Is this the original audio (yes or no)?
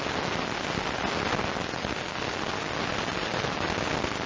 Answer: yes